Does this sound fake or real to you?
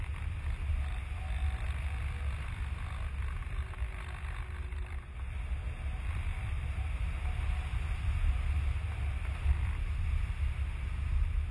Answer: real